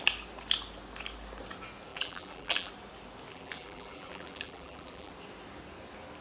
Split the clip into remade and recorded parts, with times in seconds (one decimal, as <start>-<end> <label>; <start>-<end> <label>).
0.0-1.9 recorded; 1.9-2.7 remade; 2.7-3.3 recorded; 3.3-5.1 remade; 5.1-6.2 recorded